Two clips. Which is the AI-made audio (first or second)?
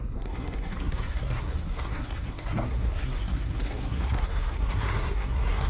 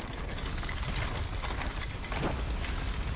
first